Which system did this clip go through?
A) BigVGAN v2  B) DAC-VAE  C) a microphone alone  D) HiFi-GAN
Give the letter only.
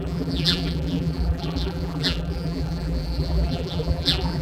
A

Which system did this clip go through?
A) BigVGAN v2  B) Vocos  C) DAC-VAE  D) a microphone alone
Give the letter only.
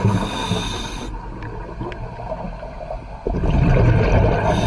D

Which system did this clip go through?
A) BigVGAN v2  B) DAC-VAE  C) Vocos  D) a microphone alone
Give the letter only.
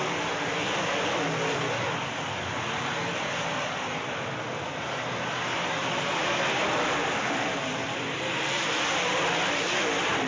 A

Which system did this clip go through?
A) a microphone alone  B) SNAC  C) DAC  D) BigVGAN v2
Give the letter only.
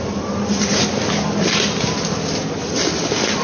A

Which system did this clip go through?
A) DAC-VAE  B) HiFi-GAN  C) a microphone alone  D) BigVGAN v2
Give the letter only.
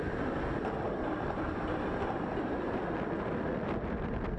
C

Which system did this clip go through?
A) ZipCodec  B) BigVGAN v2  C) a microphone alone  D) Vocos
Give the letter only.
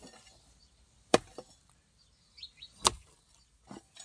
C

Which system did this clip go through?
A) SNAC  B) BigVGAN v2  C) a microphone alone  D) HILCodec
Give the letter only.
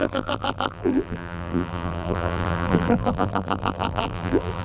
B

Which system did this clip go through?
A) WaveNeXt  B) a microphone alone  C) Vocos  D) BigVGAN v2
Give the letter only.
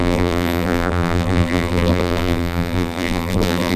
D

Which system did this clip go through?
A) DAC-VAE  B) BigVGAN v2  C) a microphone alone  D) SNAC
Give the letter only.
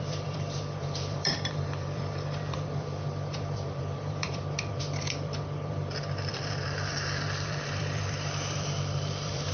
B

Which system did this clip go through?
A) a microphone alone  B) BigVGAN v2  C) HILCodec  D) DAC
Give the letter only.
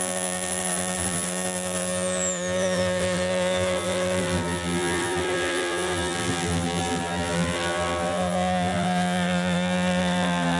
B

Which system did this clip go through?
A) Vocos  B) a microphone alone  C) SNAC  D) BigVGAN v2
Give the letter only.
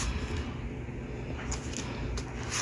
B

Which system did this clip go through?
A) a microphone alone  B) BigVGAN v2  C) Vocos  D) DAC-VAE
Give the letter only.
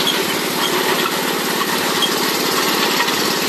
B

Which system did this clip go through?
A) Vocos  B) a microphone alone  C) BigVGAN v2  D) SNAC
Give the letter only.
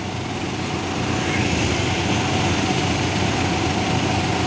C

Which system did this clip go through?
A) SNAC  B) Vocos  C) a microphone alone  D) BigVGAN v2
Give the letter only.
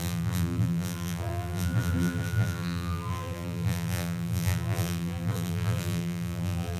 D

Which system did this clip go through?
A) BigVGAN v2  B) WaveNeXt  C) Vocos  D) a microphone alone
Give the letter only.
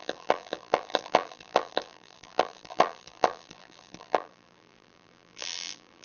A